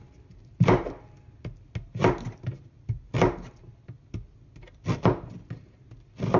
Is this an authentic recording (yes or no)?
yes